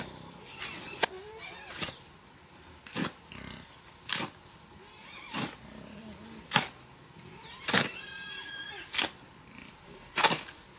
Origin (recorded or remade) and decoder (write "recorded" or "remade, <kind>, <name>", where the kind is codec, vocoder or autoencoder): recorded